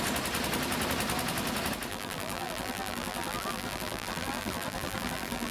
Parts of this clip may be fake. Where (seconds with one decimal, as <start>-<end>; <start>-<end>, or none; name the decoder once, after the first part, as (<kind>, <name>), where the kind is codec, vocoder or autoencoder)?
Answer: 1.9-5.5 (vocoder, BigVGAN v2)